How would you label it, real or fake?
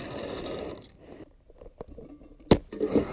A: real